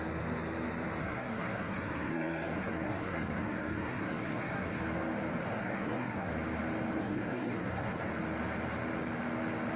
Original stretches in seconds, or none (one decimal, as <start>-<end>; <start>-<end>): 0.0-1.0; 4.8-5.5; 6.3-7.0; 8.1-9.8